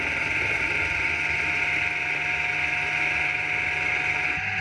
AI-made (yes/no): no